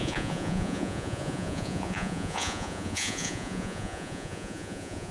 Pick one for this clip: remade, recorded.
remade